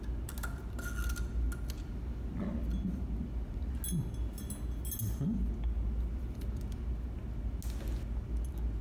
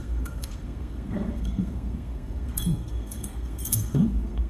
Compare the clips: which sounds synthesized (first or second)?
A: second